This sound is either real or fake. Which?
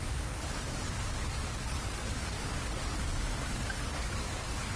fake